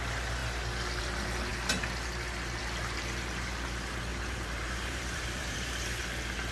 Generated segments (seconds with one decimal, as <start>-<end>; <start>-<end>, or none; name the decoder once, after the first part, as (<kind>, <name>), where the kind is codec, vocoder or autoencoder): 4.1-6.0 (vocoder, BigVGAN v2)

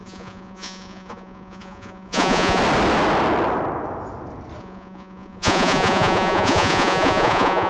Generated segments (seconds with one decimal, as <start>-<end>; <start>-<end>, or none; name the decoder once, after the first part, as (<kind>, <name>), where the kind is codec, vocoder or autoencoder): 0.0-2.6 (vocoder, Vocos); 4.6-7.7

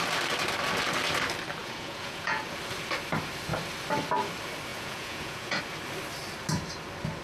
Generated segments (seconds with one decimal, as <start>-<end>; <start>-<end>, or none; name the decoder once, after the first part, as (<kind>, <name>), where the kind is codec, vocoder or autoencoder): 1.6-2.4 (vocoder, Vocos); 4.7-5.6

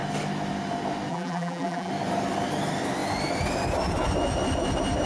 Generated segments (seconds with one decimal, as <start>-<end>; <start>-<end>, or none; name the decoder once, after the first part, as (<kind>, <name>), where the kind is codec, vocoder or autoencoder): 1.1-1.9 (vocoder, BigVGAN v2)

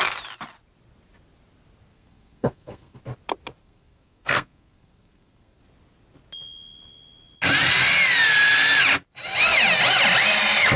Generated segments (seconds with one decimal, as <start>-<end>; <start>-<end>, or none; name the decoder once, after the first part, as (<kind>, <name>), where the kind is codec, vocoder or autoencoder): 1.9-3.0 (codec, SNAC); 3.6-5.6

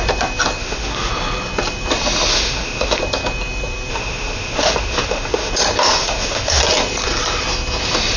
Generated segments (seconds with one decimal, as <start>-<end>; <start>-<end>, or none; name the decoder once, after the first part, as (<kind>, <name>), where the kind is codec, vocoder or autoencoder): 0.6-1.1 (autoencoder, DAC-VAE); 2.3-3.0; 3.9-5.5; 6.0-6.6

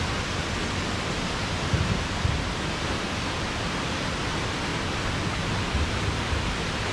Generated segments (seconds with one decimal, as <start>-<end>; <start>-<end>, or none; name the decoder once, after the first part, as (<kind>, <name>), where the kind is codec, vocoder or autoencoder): none

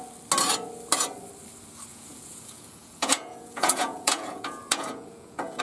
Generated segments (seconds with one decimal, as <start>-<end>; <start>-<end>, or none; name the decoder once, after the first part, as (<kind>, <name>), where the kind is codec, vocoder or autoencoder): 1.9-5.6 (vocoder, Vocos)